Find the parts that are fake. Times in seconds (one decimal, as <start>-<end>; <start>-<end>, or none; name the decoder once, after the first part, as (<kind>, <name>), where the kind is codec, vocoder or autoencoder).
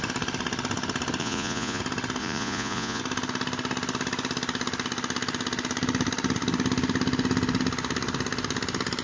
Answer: 1.2-1.8 (vocoder, Vocos); 2.2-3.0